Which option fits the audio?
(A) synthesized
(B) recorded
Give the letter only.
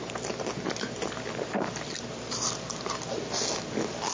B